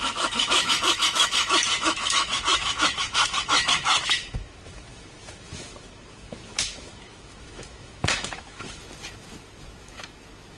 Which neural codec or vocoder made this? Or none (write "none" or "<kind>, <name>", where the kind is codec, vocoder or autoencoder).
autoencoder, DAC-VAE